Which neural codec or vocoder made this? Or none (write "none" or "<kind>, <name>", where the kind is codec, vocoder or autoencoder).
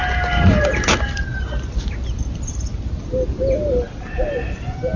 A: none